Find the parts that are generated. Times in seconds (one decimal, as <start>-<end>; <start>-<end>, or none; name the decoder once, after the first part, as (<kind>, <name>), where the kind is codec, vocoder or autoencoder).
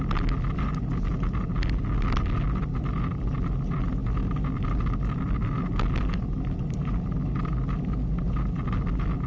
none